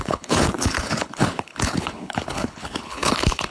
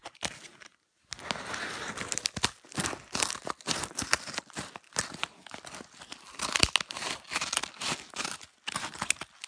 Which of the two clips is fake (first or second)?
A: first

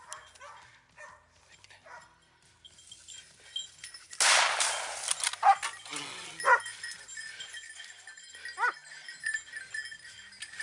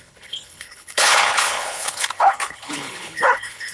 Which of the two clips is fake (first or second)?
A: second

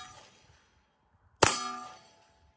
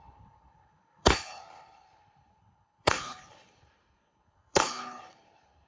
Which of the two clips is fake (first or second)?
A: second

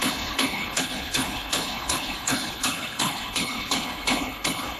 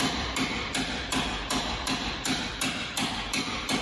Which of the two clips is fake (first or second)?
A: first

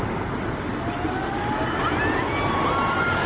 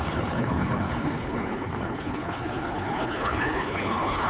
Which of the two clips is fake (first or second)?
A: second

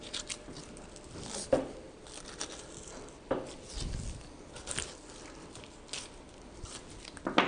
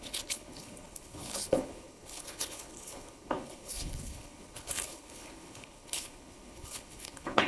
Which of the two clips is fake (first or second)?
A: second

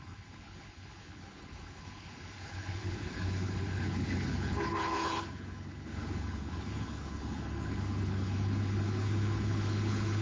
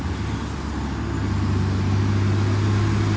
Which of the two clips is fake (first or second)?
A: first